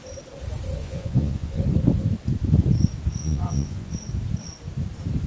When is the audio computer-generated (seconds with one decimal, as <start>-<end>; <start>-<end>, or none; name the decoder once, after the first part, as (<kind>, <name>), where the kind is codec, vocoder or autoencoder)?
0.8-1.6 (vocoder, Vocos); 3.2-3.9

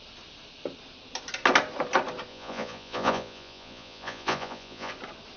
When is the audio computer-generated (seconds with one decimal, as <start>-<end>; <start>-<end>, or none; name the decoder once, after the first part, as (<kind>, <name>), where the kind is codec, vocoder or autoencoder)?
2.3-4.9 (vocoder, Vocos)